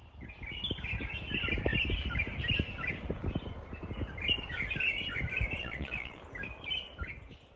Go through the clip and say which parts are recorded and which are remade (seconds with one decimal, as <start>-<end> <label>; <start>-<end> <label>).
0.0-5.6 recorded; 5.6-6.2 remade; 6.2-7.6 recorded

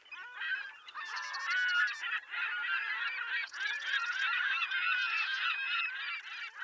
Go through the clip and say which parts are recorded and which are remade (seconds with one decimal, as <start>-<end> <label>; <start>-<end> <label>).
0.0-3.4 recorded; 3.4-5.9 remade; 5.9-6.6 recorded

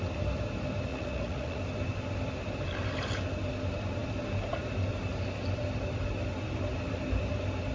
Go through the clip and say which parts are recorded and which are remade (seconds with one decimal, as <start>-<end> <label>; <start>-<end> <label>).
0.0-0.9 recorded; 0.9-1.6 remade; 1.6-7.7 recorded

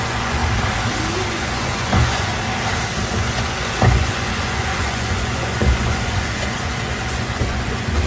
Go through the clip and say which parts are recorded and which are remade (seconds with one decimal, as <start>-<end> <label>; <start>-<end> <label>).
0.0-0.4 remade; 0.4-1.3 recorded; 1.3-2.3 remade; 2.3-3.2 recorded; 3.2-8.1 remade

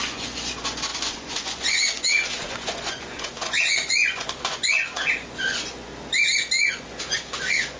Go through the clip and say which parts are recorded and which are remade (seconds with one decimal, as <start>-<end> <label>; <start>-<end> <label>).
0.0-5.9 remade; 5.9-6.7 recorded; 6.7-7.8 remade

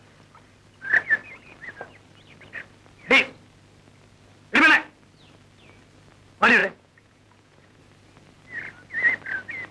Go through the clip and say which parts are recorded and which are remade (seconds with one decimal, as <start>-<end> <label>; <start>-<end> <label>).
0.0-6.6 recorded; 6.6-7.8 remade; 7.8-9.7 recorded

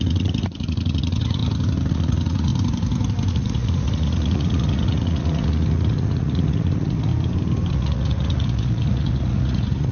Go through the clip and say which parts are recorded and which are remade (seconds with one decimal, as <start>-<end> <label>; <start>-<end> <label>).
0.0-1.4 remade; 1.4-1.9 recorded; 1.9-2.5 remade; 2.5-3.3 recorded; 3.3-7.1 remade; 7.1-7.7 recorded; 7.7-9.9 remade

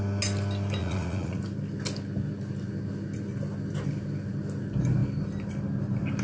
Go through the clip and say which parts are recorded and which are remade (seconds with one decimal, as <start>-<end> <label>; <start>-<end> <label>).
0.0-0.8 recorded; 0.8-1.4 remade; 1.4-6.2 recorded